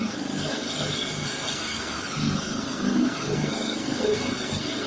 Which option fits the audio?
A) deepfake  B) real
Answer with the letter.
A